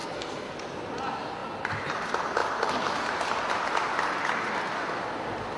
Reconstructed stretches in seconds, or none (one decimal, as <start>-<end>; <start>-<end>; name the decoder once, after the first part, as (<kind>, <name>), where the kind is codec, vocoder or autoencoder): 0.0-0.6 (codec, SNAC)